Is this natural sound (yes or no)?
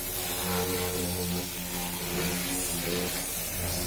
yes